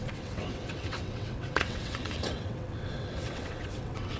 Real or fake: fake